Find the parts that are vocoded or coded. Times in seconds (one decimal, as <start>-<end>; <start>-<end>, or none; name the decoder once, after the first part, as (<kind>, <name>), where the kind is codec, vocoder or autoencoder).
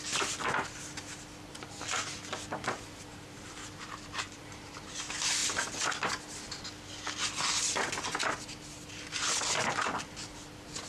3.1-4.9 (vocoder, BigVGAN v2)